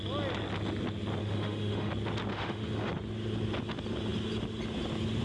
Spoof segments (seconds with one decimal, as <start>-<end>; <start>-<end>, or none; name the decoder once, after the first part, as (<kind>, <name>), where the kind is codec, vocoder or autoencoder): 1.2-1.9 (autoencoder, DAC-VAE); 2.3-2.9